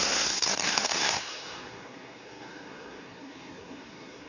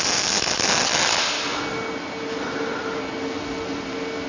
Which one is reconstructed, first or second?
first